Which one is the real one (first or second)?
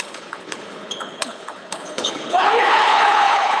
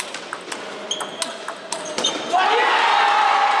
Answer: second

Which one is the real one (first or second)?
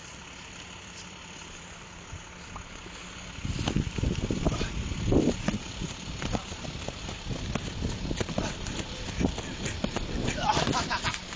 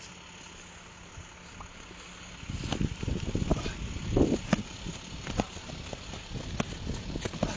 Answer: second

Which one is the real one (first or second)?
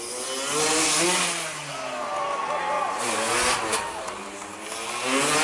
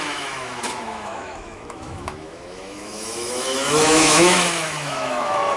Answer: first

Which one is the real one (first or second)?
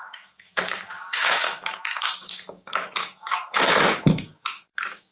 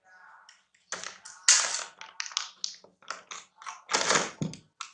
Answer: second